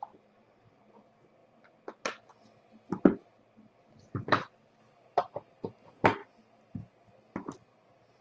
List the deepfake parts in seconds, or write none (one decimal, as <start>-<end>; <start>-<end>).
none